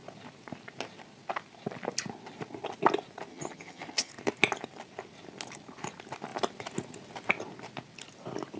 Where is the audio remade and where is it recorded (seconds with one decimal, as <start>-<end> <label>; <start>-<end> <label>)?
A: 0.0-3.3 recorded; 3.3-4.1 remade; 4.1-8.6 recorded